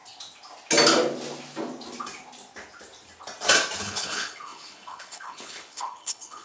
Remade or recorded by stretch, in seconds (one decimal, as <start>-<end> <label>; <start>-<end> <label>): 0.0-3.8 recorded; 3.8-6.4 remade